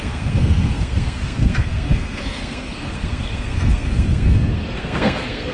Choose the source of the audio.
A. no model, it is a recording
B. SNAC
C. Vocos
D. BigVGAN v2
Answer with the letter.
B